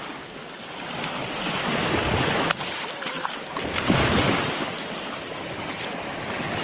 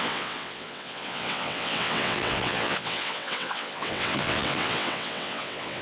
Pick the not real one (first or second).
second